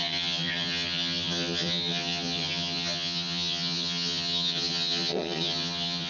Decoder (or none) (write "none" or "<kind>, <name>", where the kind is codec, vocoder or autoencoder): vocoder, HiFi-GAN